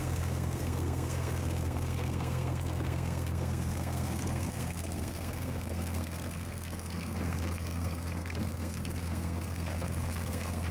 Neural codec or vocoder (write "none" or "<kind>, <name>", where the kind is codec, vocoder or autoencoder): codec, SNAC